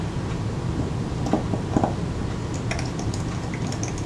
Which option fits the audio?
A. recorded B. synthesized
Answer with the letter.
A